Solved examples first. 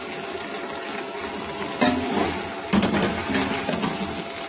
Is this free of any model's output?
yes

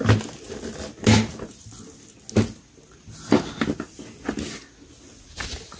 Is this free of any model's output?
yes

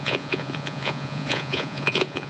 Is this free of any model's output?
no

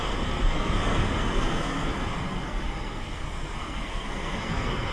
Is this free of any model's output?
no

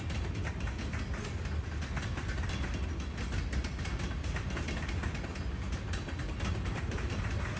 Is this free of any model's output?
yes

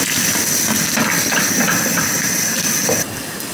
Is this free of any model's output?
yes